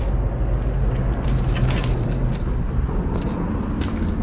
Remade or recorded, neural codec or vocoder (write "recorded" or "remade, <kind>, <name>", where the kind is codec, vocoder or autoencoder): recorded